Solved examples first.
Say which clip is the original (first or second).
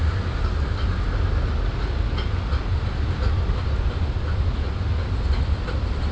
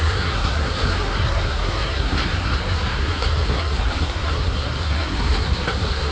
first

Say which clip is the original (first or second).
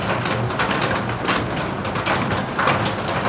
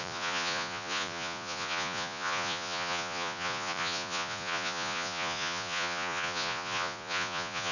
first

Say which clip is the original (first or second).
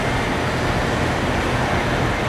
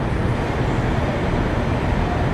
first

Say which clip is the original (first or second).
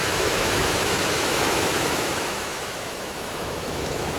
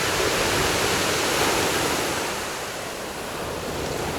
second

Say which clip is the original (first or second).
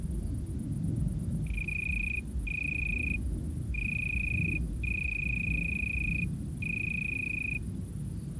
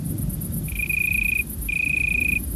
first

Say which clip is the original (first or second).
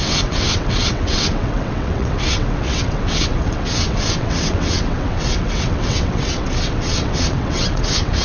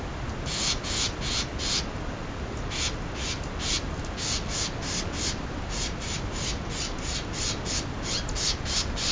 second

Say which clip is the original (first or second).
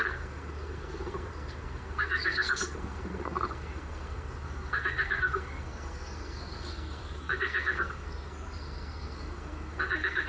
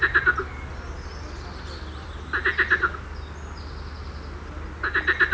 second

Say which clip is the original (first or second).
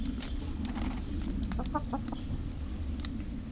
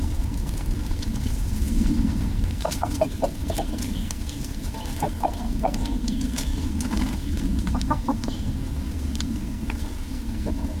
first